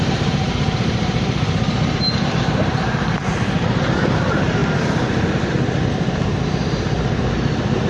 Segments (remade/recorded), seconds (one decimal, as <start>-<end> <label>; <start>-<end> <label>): 0.0-4.6 remade; 4.6-5.5 recorded; 5.5-7.9 remade